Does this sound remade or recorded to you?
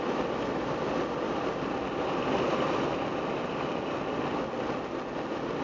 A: recorded